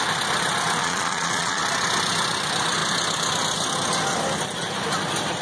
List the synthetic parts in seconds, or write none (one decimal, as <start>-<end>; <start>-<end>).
0.8-1.6

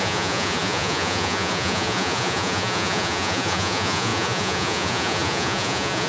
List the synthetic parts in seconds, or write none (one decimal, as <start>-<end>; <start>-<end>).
0.0-6.1

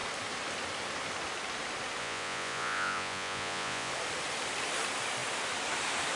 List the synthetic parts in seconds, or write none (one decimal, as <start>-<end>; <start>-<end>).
2.0-3.9

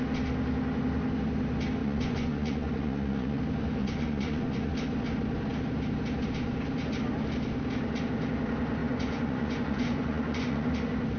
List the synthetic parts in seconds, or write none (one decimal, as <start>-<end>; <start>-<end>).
1.8-3.4; 3.8-4.7; 8.8-10.7

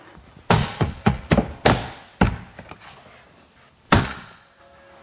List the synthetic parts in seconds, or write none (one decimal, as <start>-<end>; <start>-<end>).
0.6-1.3; 4.0-4.6

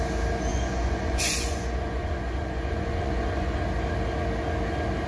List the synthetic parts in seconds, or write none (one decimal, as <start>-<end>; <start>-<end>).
0.5-3.6

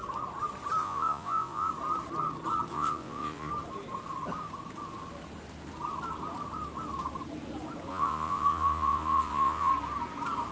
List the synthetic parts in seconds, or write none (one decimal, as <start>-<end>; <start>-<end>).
0.8-1.7; 2.7-3.5; 7.9-9.7